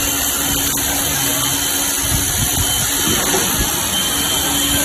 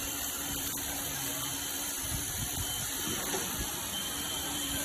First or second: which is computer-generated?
second